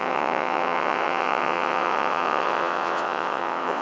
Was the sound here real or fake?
fake